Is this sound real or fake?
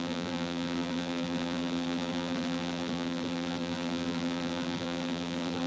fake